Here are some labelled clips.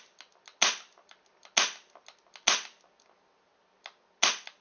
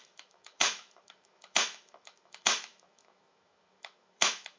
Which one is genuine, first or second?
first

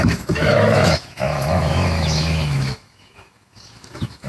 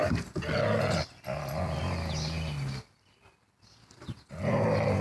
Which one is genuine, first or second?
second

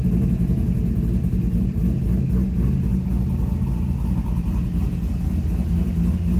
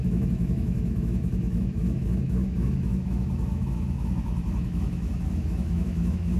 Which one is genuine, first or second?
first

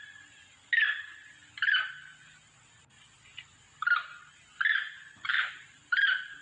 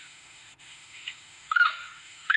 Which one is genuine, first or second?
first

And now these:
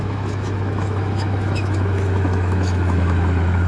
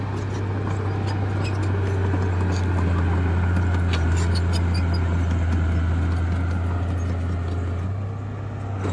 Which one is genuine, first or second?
second